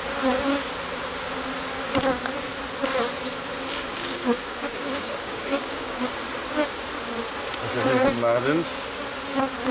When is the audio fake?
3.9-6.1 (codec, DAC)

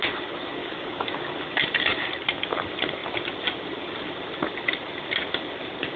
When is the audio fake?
0.6-1.1 (codec, DAC)

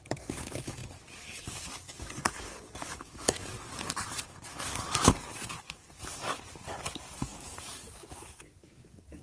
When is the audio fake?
0.0-9.2 (codec, DAC)

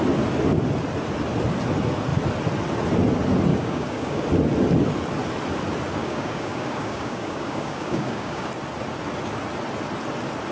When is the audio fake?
3.5-4.2 (codec, DAC); 6.0-8.5

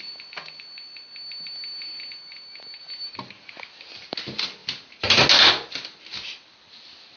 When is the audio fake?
none

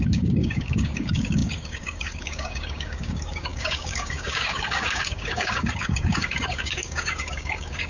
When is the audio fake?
0.0-7.9 (codec, DAC)

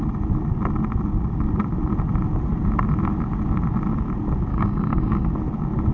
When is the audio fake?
4.5-5.3 (codec, DAC)

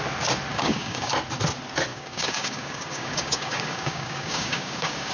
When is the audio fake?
0.5-1.1 (codec, DAC); 1.9-5.1